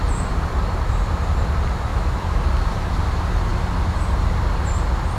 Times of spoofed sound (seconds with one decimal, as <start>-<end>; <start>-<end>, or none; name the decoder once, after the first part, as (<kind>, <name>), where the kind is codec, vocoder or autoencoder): 1.9-2.4 (autoencoder, DAC-VAE)